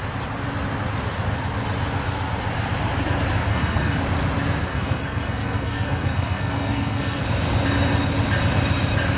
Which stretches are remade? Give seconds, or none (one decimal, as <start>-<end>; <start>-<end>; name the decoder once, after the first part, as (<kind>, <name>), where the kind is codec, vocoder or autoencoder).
3.5-4.0 (codec, SNAC); 4.7-7.2